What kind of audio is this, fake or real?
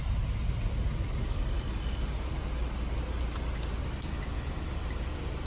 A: real